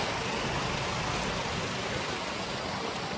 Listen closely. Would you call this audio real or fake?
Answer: real